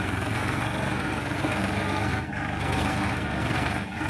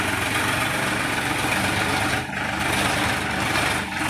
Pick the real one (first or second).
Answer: second